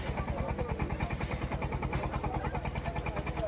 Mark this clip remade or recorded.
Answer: recorded